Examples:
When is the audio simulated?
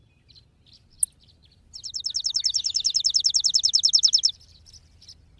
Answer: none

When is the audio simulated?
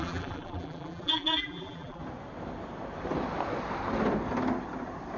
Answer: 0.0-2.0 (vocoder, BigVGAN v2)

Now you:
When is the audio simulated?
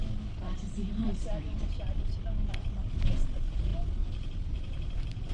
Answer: 1.0-3.1 (vocoder, BigVGAN v2); 3.7-5.3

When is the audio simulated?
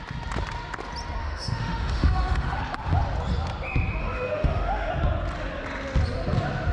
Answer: 1.2-2.6 (autoencoder, DAC-VAE); 4.0-4.9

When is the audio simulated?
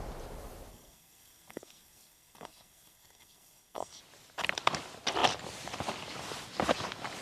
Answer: 0.7-4.0 (codec, SNAC)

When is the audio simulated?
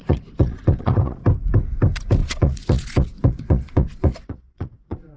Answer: 0.0-1.2 (vocoder, Vocos); 2.2-5.2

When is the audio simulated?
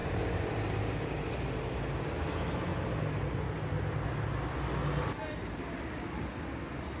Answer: 0.0-1.8 (vocoder, BigVGAN v2)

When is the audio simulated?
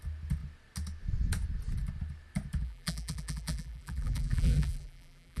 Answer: 2.6-5.4 (vocoder, BigVGAN v2)